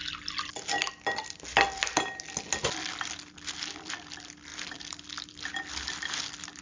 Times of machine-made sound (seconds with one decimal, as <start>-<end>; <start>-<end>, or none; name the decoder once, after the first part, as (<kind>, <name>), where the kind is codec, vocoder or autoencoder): 4.5-5.7 (vocoder, BigVGAN v2)